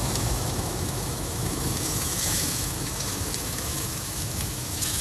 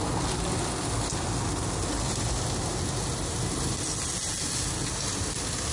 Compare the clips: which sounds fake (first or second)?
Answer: first